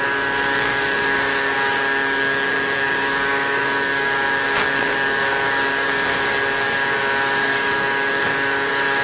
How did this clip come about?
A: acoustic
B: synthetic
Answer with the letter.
B